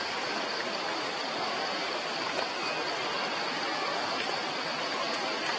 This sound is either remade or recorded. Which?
recorded